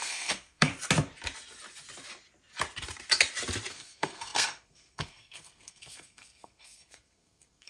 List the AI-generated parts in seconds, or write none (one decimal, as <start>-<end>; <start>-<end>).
0.0-0.7; 3.7-7.7